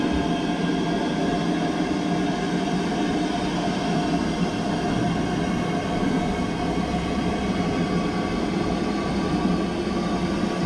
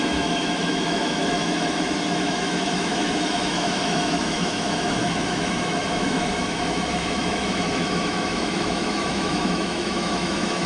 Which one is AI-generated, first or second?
second